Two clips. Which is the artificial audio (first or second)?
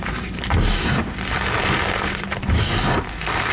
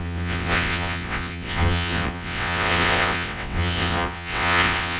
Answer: second